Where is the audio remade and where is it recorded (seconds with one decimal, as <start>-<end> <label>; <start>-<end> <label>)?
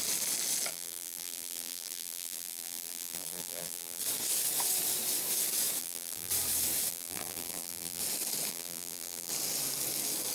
0.0-0.7 recorded; 0.7-4.0 remade; 4.0-5.8 recorded; 5.8-6.3 remade; 6.3-6.9 recorded; 6.9-8.0 remade; 8.0-8.5 recorded; 8.5-9.3 remade; 9.3-10.3 recorded